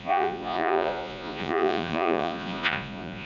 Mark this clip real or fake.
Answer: fake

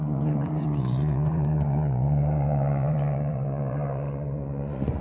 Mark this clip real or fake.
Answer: fake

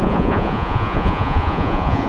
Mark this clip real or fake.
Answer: fake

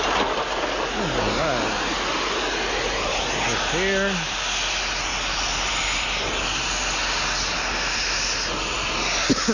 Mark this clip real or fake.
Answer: real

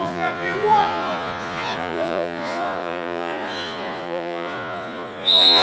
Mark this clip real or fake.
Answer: fake